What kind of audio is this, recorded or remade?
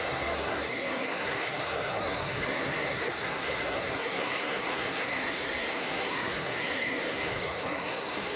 remade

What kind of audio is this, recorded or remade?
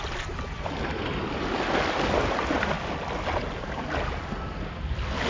recorded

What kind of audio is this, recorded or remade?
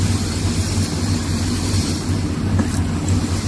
recorded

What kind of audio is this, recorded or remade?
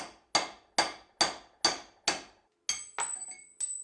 recorded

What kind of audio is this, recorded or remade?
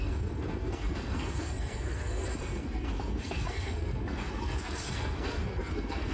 remade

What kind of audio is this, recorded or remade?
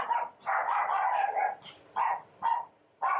recorded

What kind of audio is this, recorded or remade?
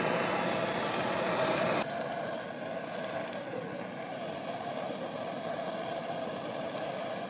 recorded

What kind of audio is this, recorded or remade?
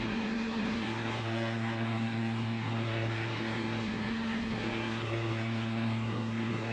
remade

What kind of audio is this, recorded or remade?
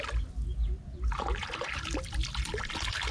recorded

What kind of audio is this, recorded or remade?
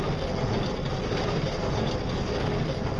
recorded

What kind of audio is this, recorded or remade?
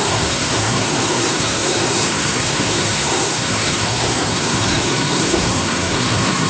remade